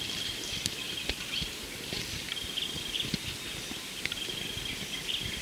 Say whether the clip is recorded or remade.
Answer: recorded